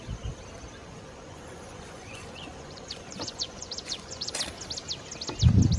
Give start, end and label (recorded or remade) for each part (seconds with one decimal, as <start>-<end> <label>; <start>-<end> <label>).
0.0-0.8 recorded; 0.8-4.3 remade; 4.3-5.8 recorded